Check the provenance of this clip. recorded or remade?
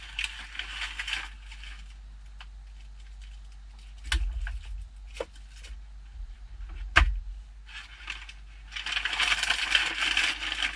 recorded